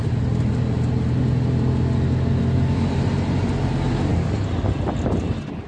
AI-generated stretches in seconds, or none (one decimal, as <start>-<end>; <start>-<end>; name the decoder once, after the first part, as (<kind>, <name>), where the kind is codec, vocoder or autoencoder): none

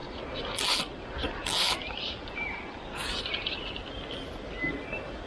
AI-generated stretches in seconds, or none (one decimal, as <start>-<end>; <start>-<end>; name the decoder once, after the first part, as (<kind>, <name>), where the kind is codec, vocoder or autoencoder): none

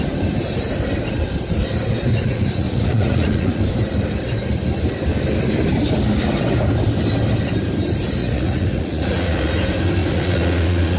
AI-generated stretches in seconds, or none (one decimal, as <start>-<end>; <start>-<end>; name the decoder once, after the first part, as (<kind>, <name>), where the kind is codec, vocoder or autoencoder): 2.1-3.6 (vocoder, Vocos); 8.2-9.5; 10.0-11.0

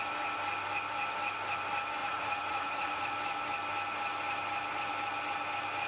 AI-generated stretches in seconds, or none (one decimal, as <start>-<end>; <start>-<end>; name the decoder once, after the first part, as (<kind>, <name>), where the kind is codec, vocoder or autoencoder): 2.0-3.0 (vocoder, Vocos)

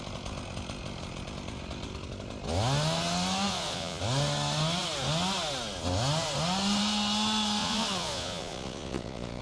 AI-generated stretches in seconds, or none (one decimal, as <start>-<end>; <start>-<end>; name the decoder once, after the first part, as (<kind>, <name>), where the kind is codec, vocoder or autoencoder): 3.5-4.0 (vocoder, Vocos); 7.6-9.4

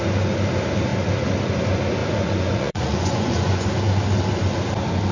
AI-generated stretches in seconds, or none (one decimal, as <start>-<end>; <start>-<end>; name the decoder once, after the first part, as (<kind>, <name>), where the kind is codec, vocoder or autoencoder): 2.0-3.7 (vocoder, Vocos)

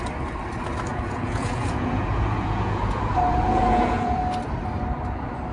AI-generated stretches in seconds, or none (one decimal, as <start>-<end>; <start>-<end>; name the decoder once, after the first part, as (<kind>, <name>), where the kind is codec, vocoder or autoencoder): 0.9-4.2 (vocoder, Vocos)